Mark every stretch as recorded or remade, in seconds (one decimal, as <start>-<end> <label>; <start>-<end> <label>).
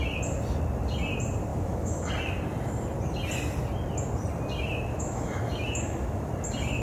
0.0-1.5 recorded; 1.5-2.1 remade; 2.1-4.9 recorded; 4.9-6.3 remade; 6.3-6.8 recorded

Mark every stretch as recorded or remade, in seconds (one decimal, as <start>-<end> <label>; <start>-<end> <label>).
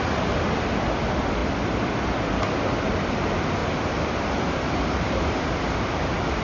0.0-3.6 recorded; 3.6-5.5 remade; 5.5-6.4 recorded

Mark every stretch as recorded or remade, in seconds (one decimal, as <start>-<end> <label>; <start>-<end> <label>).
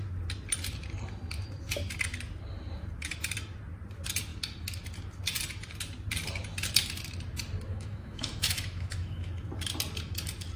0.0-7.7 recorded; 7.7-9.5 remade; 9.5-10.6 recorded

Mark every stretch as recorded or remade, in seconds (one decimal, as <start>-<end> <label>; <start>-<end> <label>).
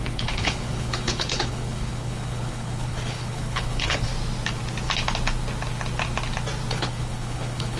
0.0-4.1 remade; 4.1-6.7 recorded; 6.7-7.8 remade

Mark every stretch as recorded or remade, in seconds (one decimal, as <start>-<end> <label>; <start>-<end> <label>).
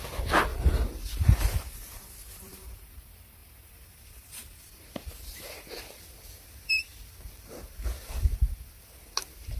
0.0-0.5 recorded; 0.5-3.0 remade; 3.0-3.4 recorded; 3.4-6.0 remade; 6.0-6.9 recorded; 6.9-8.4 remade; 8.4-9.6 recorded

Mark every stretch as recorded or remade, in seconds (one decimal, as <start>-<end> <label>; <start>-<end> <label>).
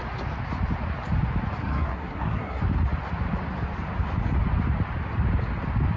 0.0-1.6 recorded; 1.6-2.6 remade; 2.6-6.0 recorded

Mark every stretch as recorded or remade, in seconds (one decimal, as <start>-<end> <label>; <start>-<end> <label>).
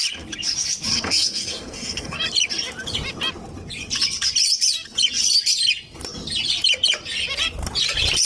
0.0-0.9 recorded; 0.9-2.2 remade; 2.2-8.2 recorded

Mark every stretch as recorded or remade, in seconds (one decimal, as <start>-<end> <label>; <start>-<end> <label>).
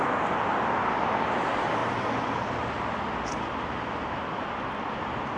0.0-5.4 recorded